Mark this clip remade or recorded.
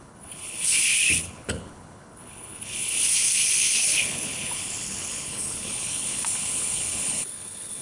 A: remade